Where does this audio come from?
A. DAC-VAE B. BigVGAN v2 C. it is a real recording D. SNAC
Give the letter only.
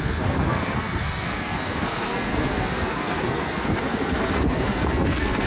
D